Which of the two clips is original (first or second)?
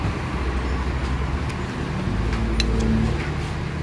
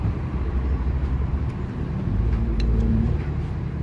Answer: first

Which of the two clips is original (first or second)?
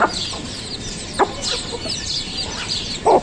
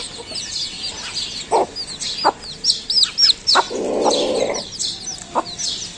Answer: second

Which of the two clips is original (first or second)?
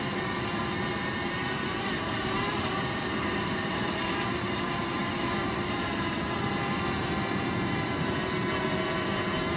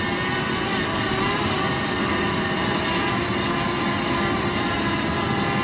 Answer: second